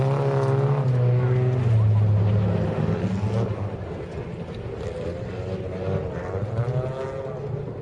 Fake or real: real